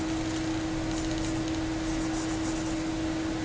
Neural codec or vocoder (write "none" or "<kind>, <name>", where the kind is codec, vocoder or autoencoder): none